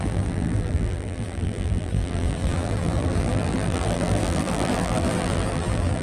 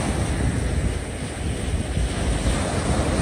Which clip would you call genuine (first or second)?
second